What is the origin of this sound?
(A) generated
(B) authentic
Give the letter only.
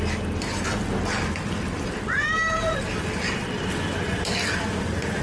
B